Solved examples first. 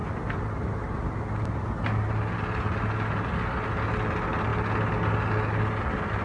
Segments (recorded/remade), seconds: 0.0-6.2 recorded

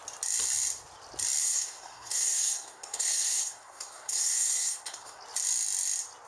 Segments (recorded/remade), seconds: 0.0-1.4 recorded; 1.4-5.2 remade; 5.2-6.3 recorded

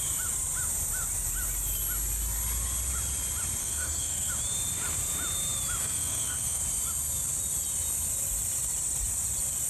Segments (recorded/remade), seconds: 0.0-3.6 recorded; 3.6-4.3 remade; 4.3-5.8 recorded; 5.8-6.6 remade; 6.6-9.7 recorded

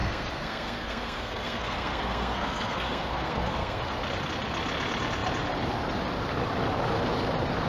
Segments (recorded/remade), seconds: 0.0-3.8 remade; 3.8-7.7 recorded